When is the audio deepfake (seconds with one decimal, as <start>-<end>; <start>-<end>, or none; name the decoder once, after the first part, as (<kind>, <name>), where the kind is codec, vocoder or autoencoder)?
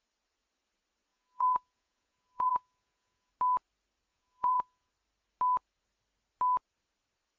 1.1-3.3 (vocoder, Vocos); 4.1-4.9